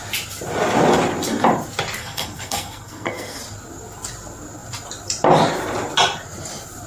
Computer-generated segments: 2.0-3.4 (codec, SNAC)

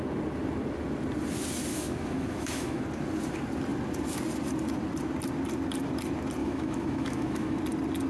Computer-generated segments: 1.7-2.8 (autoencoder, DAC-VAE); 6.4-7.6

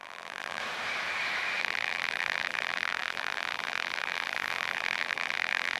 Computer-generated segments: 0.0-0.6 (vocoder, BigVGAN v2); 1.6-5.8

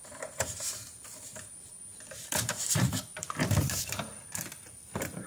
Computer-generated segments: 0.0-5.3 (vocoder, BigVGAN v2)

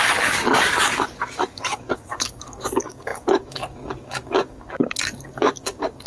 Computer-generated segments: 0.0-6.1 (codec, DAC)

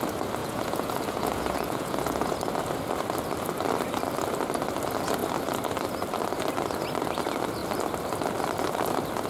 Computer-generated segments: 0.4-2.3 (vocoder, Vocos)